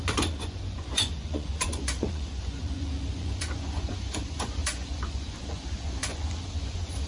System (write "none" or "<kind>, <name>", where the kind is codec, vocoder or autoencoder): vocoder, Vocos